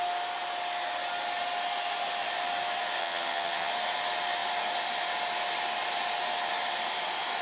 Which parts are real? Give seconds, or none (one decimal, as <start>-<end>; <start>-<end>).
0.0-3.0; 3.7-7.4